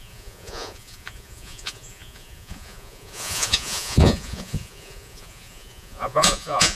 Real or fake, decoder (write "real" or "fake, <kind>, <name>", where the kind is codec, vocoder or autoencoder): fake, vocoder, Vocos